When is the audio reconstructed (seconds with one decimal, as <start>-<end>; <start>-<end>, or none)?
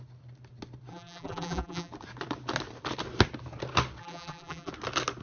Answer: 0.9-1.9; 4.0-4.7